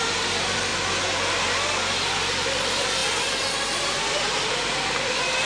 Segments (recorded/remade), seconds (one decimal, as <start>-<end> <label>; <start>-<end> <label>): 0.0-0.7 remade; 0.7-1.4 recorded; 1.4-3.0 remade; 3.0-4.0 recorded; 4.0-5.5 remade